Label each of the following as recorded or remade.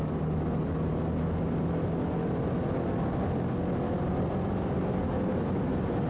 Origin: recorded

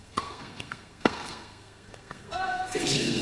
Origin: remade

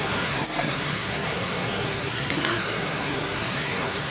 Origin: remade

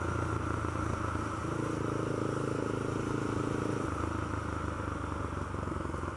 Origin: recorded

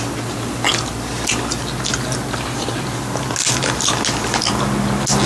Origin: recorded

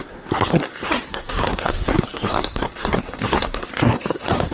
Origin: remade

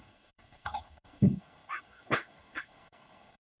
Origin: remade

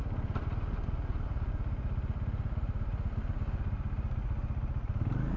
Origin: recorded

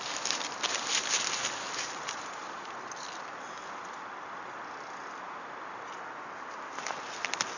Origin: recorded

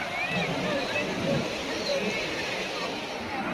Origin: recorded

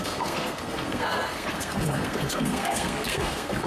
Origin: remade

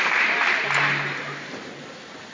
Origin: recorded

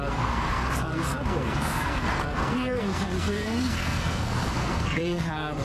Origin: remade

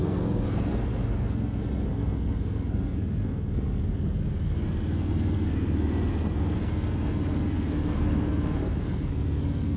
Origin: remade